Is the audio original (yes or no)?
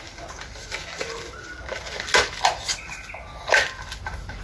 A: yes